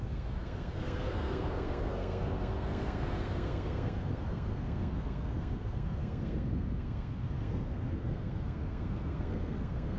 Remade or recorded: remade